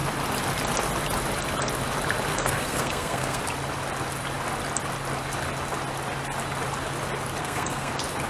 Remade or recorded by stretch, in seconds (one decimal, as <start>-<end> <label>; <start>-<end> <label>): 0.0-2.3 recorded; 2.3-3.4 remade; 3.4-7.4 recorded; 7.4-7.9 remade; 7.9-8.3 recorded